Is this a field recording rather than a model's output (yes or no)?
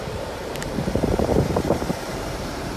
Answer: no